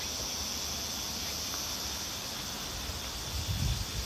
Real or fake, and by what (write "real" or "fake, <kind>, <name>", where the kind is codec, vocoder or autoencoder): real